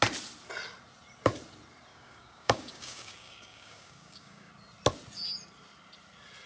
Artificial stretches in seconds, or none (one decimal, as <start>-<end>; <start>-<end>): 1.9-4.5